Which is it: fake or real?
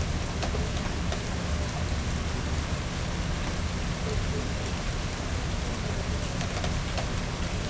real